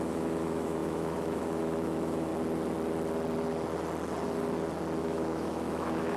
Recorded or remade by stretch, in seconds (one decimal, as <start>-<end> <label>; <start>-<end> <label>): 0.0-2.3 remade; 2.3-5.0 recorded; 5.0-6.2 remade